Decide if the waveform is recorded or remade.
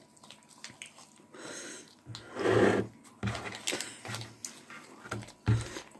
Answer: recorded